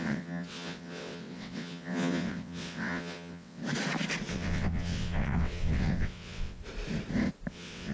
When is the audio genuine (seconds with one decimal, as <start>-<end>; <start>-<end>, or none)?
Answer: 3.6-4.3; 6.6-7.5

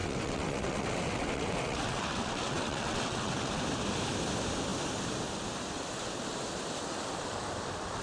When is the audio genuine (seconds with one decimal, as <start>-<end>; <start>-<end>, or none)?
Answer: 3.5-8.0